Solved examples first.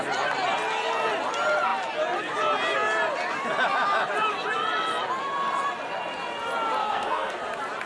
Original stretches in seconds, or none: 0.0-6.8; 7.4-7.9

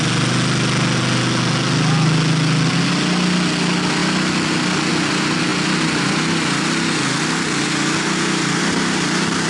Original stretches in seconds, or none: 0.0-9.5

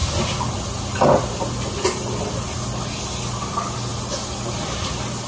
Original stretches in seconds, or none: 0.0-5.3

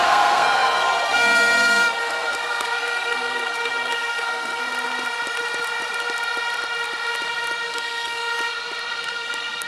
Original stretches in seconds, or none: 4.6-7.7; 8.2-8.9

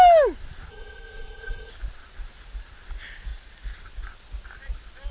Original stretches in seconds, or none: 0.0-0.7; 1.7-5.1

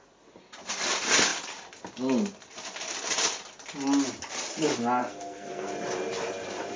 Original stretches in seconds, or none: 0.0-5.0; 5.7-6.8